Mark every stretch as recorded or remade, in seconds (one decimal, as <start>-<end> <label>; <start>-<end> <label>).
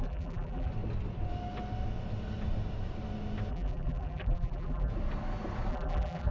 0.0-0.7 remade; 0.7-3.5 recorded; 3.5-4.9 remade; 4.9-5.7 recorded; 5.7-6.3 remade